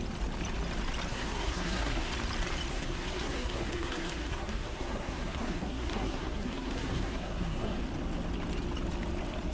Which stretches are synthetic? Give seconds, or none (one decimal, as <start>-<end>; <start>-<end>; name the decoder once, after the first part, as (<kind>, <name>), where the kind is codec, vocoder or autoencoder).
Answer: 1.1-2.1 (codec, SNAC); 2.7-7.8